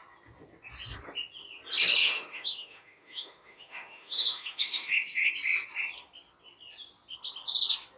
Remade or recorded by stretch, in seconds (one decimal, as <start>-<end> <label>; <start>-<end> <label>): 0.0-2.0 recorded; 2.0-5.3 remade; 5.3-8.0 recorded